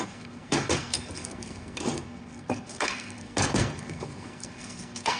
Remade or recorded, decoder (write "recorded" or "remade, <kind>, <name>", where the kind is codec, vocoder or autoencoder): remade, codec, SNAC